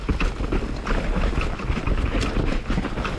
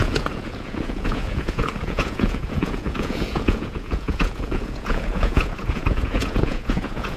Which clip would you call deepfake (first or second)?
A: second